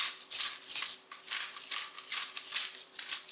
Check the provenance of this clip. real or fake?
real